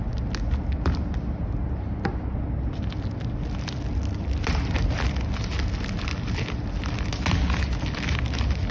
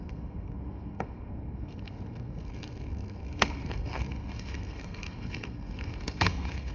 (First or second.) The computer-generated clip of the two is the second